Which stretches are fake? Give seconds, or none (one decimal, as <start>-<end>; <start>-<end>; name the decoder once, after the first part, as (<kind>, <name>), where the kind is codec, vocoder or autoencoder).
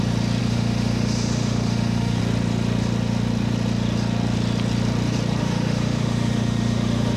0.4-2.2 (autoencoder, DAC-VAE); 5.4-7.2